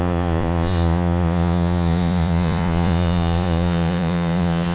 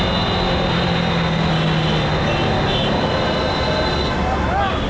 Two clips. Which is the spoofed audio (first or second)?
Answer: first